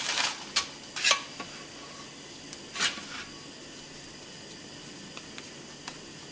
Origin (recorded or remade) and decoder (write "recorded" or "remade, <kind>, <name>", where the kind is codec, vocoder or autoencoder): recorded